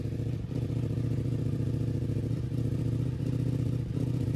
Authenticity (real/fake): fake